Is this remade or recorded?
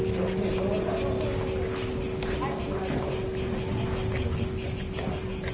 recorded